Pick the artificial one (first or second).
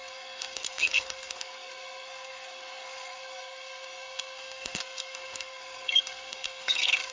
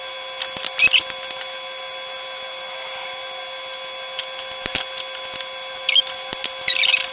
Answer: first